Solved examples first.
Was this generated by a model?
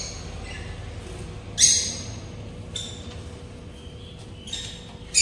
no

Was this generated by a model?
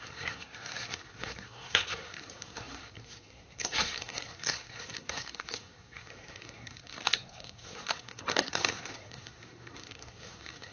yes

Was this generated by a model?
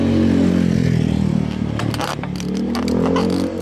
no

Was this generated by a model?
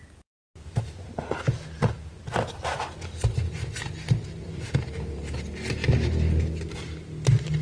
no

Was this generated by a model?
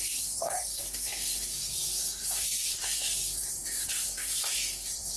yes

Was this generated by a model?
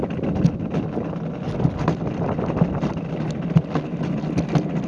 yes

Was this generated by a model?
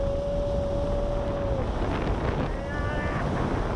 no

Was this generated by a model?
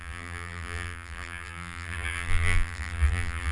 yes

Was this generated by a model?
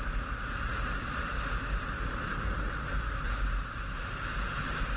no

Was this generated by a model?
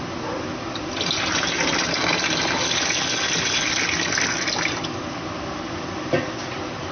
no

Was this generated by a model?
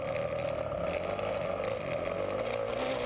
no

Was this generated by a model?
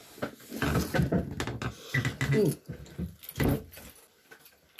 no